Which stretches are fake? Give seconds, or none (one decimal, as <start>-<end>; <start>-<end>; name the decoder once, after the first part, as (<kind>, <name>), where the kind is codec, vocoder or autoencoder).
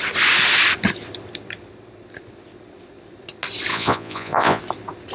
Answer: 3.7-4.6 (vocoder, Vocos)